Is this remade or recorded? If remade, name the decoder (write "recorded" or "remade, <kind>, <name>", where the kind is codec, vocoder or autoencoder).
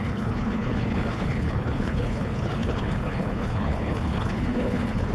remade, codec, HILCodec